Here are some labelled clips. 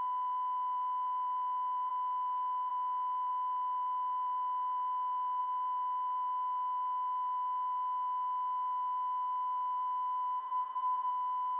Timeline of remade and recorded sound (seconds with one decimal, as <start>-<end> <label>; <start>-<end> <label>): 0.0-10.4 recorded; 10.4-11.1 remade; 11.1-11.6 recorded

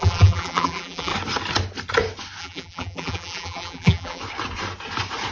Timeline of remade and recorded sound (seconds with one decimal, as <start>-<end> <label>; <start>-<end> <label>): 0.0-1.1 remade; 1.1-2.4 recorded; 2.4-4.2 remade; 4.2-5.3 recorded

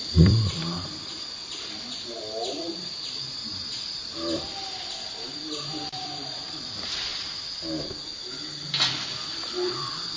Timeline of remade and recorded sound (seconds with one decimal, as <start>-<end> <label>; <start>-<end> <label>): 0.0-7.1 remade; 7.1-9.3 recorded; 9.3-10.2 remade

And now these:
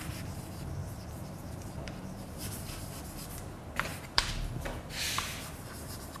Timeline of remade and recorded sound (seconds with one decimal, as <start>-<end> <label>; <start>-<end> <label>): 0.0-0.8 recorded; 0.8-2.4 remade; 2.4-3.9 recorded; 3.9-4.5 remade; 4.5-6.2 recorded

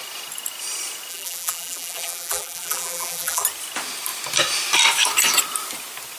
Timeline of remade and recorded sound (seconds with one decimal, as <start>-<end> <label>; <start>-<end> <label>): 0.0-1.1 recorded; 1.1-3.4 remade; 3.4-6.2 recorded